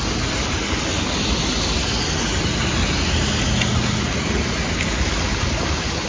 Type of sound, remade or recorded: recorded